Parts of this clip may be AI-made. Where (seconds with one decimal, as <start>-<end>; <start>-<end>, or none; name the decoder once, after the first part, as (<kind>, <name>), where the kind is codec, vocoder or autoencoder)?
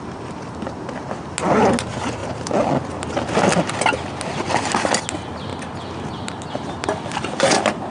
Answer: none